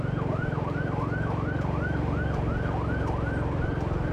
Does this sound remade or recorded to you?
recorded